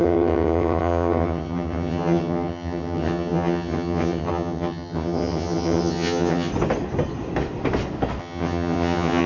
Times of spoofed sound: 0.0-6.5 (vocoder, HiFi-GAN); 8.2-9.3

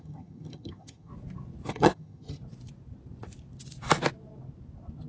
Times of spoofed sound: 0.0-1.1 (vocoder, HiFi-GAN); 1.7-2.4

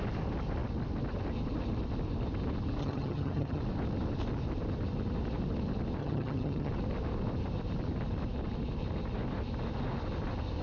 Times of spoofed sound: 2.8-3.6 (vocoder, HiFi-GAN); 6.0-6.7